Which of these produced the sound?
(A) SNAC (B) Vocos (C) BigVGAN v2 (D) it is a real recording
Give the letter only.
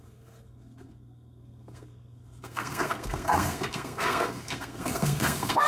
A